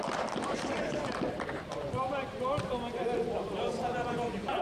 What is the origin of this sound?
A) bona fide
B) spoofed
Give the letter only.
A